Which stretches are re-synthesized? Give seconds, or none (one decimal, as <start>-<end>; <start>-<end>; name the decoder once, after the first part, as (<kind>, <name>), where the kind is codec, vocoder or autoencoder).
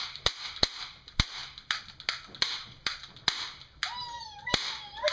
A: none